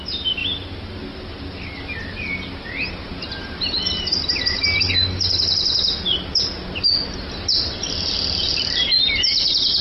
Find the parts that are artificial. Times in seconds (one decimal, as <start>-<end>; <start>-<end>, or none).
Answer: none